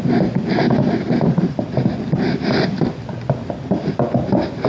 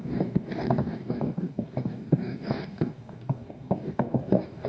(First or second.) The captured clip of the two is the first